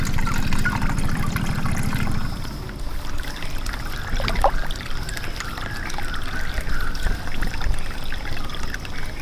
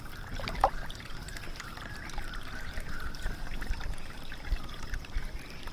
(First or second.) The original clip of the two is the first